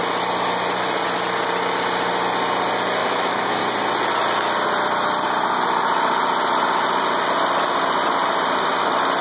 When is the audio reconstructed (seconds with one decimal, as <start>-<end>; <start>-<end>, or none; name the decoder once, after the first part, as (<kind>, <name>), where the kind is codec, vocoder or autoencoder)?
3.0-3.6 (autoencoder, DAC-VAE)